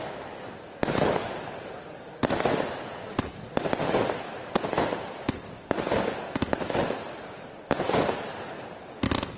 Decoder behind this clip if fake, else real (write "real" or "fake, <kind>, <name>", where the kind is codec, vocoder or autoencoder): real